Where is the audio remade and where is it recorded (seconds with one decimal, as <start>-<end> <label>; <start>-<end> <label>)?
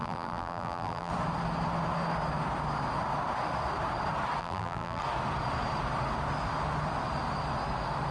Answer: 0.0-1.1 remade; 1.1-4.4 recorded; 4.4-5.0 remade; 5.0-8.1 recorded